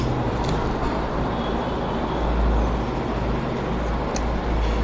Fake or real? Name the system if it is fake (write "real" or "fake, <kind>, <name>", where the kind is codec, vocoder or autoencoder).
real